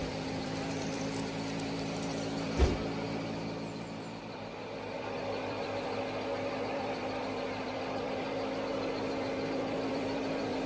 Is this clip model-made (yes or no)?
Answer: yes